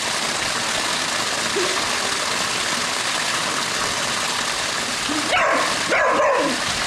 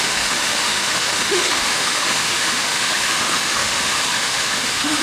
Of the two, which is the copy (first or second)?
second